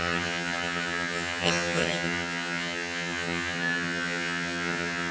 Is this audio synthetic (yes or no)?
yes